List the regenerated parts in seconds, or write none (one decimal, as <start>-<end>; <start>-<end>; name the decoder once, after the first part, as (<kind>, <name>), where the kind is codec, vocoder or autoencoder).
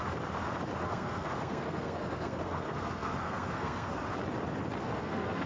0.8-4.1 (codec, SNAC); 4.8-5.5